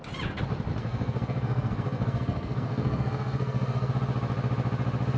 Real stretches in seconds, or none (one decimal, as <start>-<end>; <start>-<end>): 0.0-0.8; 3.9-5.2